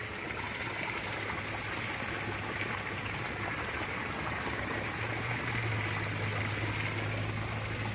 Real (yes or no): yes